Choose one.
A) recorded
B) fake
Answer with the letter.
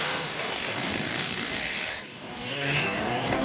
B